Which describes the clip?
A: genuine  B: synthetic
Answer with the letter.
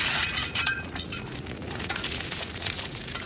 B